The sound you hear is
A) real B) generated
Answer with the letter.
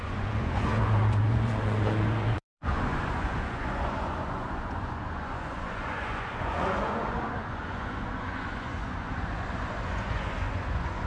B